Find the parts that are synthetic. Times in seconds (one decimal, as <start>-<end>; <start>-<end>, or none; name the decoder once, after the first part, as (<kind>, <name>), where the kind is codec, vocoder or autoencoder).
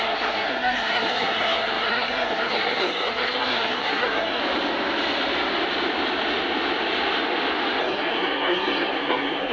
0.0-4.4 (codec, SNAC); 7.8-9.5